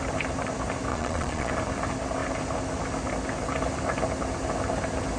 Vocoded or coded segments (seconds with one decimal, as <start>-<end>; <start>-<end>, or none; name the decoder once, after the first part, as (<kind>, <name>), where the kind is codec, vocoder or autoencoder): 0.9-1.5 (vocoder, Vocos)